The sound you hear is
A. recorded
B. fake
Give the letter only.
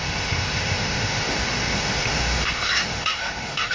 B